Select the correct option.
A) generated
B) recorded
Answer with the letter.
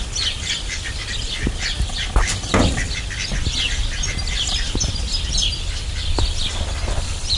B